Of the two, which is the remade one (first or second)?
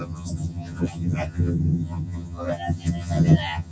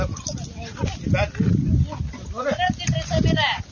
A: first